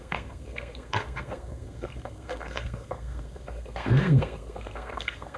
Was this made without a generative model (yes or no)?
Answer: no